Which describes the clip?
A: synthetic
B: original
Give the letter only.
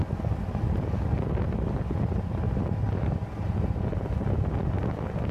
B